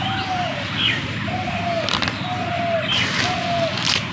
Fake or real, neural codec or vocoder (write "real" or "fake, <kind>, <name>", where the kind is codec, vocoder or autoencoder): real